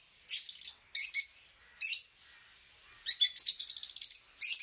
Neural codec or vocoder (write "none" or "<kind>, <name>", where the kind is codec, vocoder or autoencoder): none